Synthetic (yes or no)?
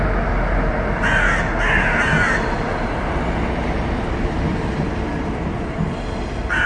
no